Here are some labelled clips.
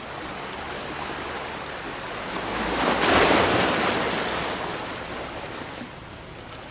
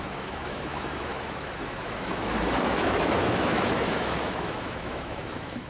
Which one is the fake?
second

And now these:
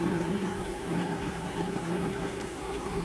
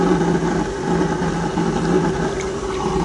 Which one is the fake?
first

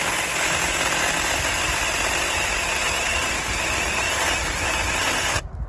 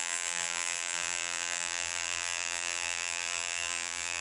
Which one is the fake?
second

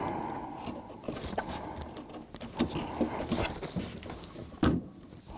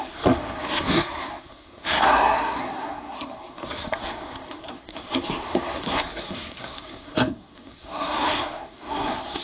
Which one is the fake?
second